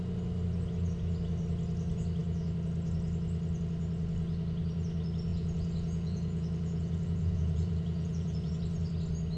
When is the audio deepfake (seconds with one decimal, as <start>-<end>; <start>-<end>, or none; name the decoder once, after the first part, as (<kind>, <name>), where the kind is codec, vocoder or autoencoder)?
5.3-8.5 (vocoder, Vocos)